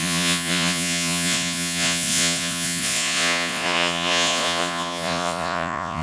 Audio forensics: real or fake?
fake